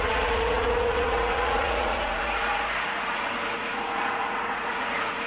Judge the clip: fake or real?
fake